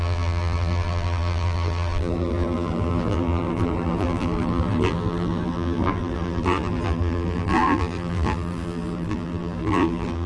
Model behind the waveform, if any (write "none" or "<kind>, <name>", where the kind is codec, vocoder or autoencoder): vocoder, BigVGAN v2